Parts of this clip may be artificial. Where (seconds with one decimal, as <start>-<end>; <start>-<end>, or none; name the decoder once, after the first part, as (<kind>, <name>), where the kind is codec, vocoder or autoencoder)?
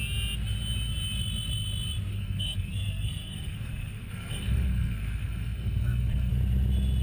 2.1-6.3 (codec, SNAC)